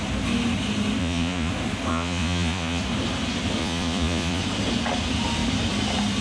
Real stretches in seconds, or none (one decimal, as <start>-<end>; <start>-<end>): 0.0-1.0; 1.5-1.9; 2.8-3.6; 4.4-6.2

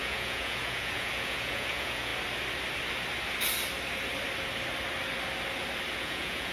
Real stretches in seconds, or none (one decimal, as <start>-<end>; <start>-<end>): 2.1-6.0

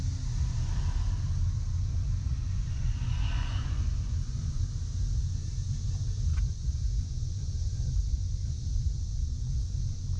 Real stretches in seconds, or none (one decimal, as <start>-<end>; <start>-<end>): 0.0-2.3; 4.6-6.3; 9.5-10.2

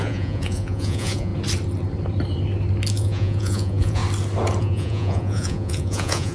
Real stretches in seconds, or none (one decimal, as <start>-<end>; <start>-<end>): 1.3-2.9; 4.0-4.6

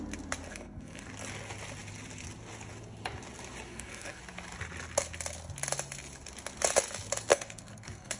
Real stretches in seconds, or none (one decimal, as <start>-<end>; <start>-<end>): 0.0-0.5; 1.1-3.7; 4.2-7.3

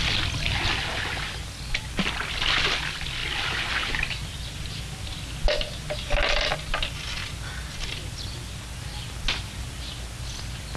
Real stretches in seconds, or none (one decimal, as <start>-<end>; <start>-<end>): 0.0-10.8

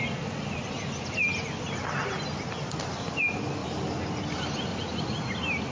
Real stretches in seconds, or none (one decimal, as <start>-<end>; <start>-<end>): 0.0-4.7; 5.3-5.7

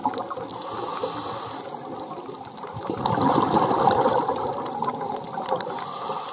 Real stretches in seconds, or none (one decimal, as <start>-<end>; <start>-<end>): 0.0-6.3